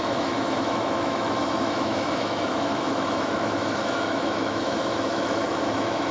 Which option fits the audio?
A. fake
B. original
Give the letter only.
A